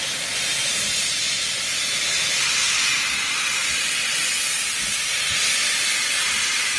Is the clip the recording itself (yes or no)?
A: yes